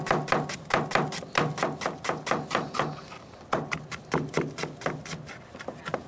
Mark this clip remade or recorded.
recorded